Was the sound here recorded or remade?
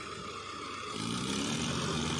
recorded